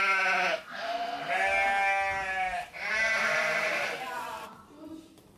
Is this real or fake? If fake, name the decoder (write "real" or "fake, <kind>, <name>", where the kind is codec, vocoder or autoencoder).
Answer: real